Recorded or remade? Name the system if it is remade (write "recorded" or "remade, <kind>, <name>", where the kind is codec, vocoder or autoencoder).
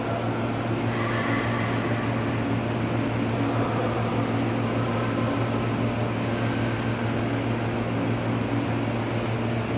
recorded